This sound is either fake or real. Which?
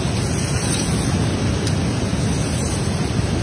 real